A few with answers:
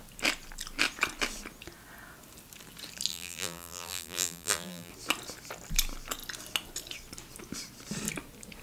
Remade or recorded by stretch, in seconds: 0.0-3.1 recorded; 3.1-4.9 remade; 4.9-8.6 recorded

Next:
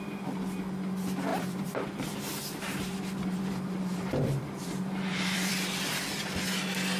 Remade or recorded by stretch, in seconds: 0.0-1.3 recorded; 1.3-5.5 remade; 5.5-7.0 recorded